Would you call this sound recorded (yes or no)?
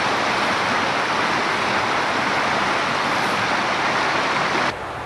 yes